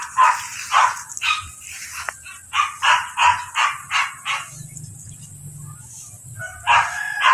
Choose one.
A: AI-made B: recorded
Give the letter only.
B